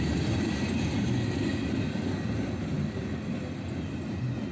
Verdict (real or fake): real